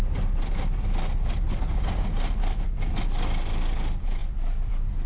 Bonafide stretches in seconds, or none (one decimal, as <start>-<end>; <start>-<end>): 0.0-5.1